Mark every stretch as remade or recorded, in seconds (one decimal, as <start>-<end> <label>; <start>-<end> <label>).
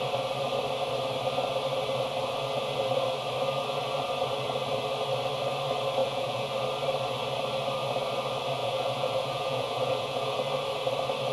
0.0-6.0 recorded; 6.0-6.5 remade; 6.5-8.6 recorded; 8.6-10.4 remade; 10.4-11.3 recorded